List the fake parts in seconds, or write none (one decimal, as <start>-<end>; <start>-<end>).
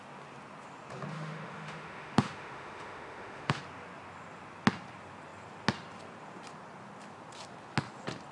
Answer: 1.1-3.6